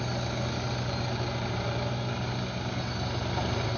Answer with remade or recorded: recorded